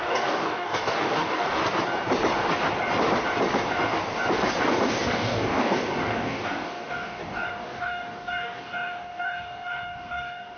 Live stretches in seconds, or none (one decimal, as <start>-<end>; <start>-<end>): 1.6-4.6